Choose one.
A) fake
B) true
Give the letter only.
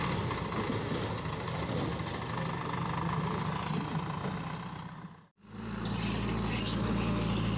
B